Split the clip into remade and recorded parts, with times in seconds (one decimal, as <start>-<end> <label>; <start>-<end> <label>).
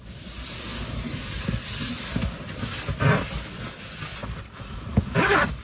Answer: 0.0-4.2 recorded; 4.2-5.0 remade; 5.0-5.6 recorded